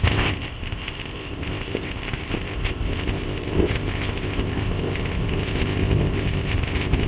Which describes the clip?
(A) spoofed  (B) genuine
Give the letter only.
A